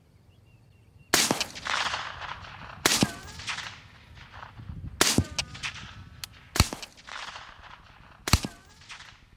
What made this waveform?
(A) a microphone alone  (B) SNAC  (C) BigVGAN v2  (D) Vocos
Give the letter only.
A